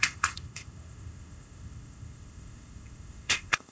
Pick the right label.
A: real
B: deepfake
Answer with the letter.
B